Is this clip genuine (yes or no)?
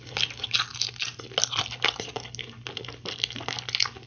yes